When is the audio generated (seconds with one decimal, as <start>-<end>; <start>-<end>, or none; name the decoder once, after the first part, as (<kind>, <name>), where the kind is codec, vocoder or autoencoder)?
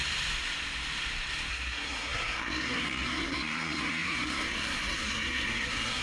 1.5-6.0 (codec, SNAC)